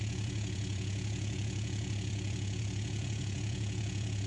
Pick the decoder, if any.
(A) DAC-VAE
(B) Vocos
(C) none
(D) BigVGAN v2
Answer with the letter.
B